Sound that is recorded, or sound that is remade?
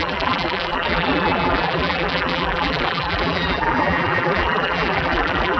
remade